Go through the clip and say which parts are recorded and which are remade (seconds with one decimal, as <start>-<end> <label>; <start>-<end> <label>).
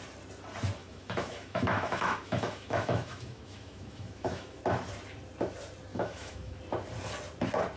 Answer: 0.0-0.8 recorded; 0.8-4.6 remade; 4.6-5.9 recorded; 5.9-6.6 remade; 6.6-7.8 recorded